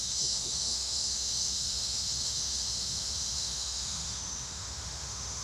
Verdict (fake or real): fake